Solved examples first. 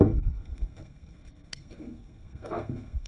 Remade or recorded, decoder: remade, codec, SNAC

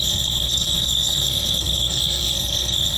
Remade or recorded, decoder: remade, codec, SNAC